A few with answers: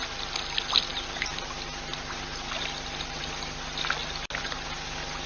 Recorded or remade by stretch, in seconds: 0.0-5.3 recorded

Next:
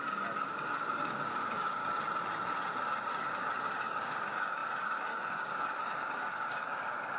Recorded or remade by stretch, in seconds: 0.0-1.8 remade; 1.8-3.1 recorded; 3.1-7.2 remade

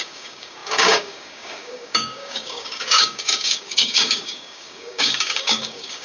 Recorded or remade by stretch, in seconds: 0.0-6.0 remade

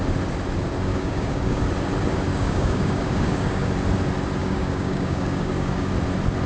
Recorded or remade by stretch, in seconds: 0.0-0.9 recorded; 0.9-1.6 remade; 1.6-2.3 recorded; 2.3-3.7 remade; 3.7-4.4 recorded; 4.4-5.9 remade; 5.9-6.5 recorded

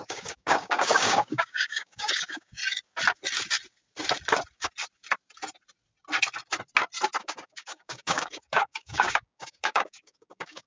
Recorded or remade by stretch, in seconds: 0.0-2.6 remade; 2.6-7.2 recorded; 7.2-10.7 remade

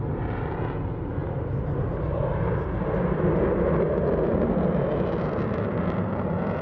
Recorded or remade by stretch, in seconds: 0.0-6.6 recorded